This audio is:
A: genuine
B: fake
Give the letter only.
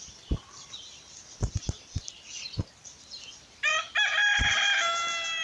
A